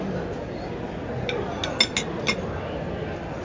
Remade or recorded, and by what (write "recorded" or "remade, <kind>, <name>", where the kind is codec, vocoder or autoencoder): recorded